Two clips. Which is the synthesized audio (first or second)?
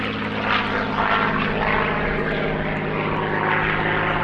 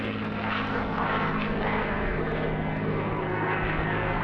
second